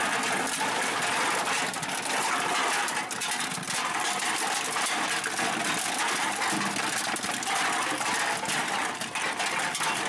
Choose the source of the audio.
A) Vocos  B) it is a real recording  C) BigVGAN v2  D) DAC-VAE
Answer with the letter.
B